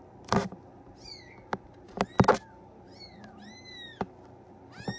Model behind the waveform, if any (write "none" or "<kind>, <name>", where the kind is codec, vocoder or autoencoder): none